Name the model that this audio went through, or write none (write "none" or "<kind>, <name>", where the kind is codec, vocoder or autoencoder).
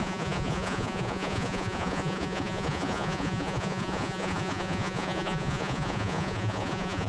vocoder, Vocos